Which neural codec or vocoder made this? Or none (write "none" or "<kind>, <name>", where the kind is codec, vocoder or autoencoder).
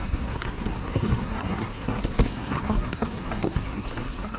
codec, SNAC